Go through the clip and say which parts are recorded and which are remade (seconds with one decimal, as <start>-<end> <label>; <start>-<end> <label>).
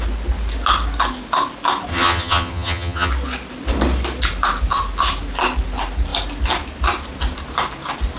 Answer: 0.0-1.9 recorded; 1.9-3.1 remade; 3.1-8.2 recorded